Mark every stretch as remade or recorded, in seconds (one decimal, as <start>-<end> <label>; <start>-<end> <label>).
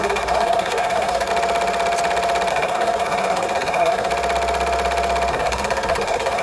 0.0-1.3 remade; 1.3-2.5 recorded; 2.5-4.1 remade; 4.1-5.3 recorded; 5.3-6.4 remade